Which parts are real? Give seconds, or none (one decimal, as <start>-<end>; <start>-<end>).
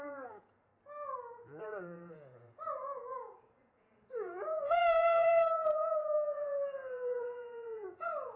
0.7-1.6